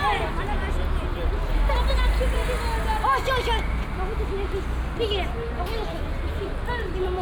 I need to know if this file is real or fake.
real